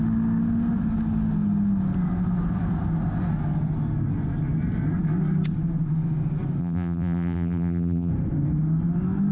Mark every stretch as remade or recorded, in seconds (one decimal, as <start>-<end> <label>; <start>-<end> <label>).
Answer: 0.0-6.6 recorded; 6.6-8.1 remade; 8.1-9.3 recorded